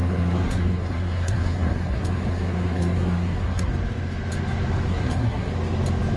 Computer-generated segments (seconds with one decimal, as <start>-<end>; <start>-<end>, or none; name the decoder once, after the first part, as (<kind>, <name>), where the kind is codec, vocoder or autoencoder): 0.0-3.7 (codec, SNAC); 4.9-5.5